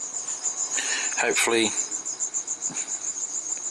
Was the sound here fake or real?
real